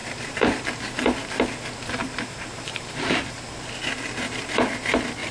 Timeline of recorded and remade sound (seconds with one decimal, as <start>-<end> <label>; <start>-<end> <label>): 0.0-0.6 remade; 0.6-2.0 recorded; 2.0-3.5 remade; 3.5-5.3 recorded